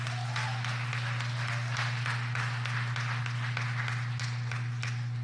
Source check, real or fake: real